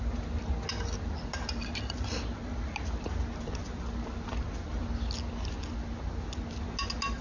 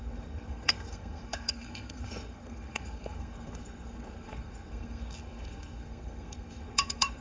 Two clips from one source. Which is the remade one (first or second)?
second